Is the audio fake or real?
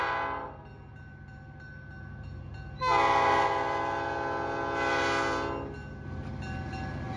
real